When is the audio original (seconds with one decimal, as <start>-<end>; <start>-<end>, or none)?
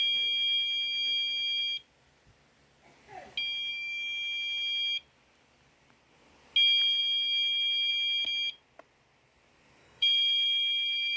0.0-9.8